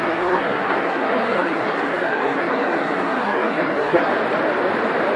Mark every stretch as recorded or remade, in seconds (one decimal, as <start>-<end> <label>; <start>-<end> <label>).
0.0-4.1 remade; 4.1-5.2 recorded